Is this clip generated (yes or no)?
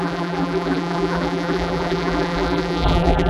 yes